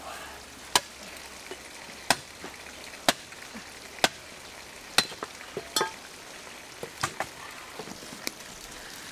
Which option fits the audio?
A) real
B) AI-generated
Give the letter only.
A